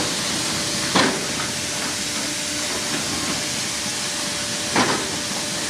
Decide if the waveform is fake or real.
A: real